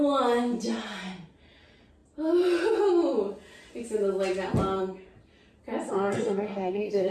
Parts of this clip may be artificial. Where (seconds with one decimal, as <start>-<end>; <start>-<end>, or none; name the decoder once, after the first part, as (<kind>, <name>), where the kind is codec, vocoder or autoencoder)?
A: 5.9-7.1 (codec, SNAC)